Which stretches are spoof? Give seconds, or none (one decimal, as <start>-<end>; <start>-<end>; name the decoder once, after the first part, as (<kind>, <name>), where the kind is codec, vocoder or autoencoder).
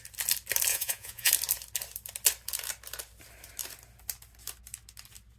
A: 0.7-1.3 (vocoder, Vocos)